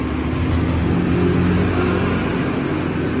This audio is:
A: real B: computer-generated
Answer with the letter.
A